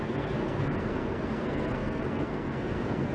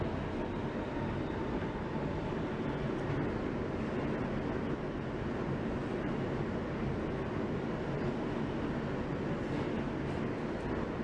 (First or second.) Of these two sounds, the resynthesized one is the first